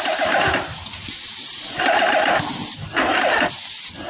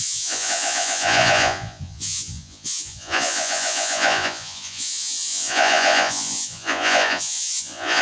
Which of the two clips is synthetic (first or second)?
second